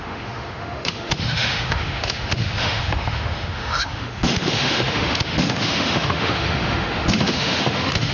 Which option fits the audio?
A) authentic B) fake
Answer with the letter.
B